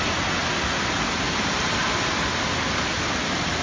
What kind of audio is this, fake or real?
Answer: real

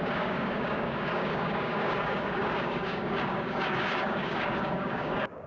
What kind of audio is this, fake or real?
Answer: fake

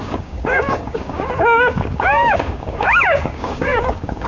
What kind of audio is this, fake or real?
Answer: fake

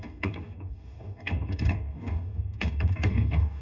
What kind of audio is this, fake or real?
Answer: fake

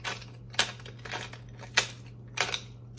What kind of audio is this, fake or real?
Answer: real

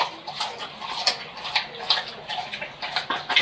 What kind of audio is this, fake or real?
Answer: real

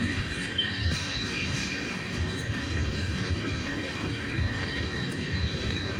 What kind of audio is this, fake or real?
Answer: fake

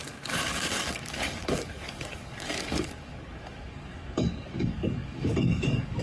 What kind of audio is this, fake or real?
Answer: fake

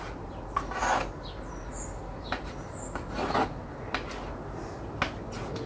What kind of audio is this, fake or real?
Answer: real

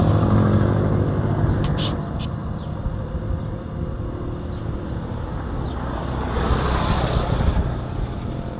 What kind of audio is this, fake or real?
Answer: real